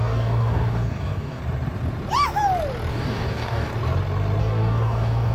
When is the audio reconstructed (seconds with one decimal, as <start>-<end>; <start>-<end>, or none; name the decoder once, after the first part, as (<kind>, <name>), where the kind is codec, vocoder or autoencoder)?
0.0-1.4 (codec, DAC); 2.9-3.7; 4.4-5.3